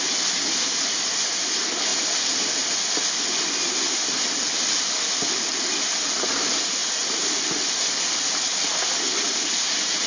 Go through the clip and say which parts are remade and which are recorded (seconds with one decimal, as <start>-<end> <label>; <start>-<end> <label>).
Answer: 0.0-10.1 recorded